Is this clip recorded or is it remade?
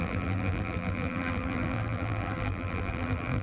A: remade